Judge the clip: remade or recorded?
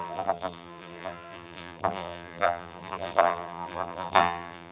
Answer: remade